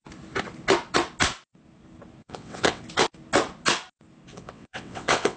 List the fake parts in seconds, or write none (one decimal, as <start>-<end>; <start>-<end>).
2.2-2.8; 4.3-5.4